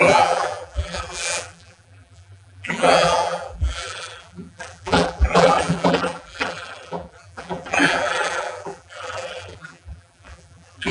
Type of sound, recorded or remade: remade